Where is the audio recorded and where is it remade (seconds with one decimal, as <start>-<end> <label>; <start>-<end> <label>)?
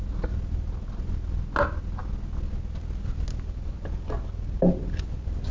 0.0-5.5 recorded